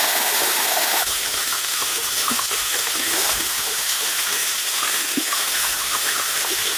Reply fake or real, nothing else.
fake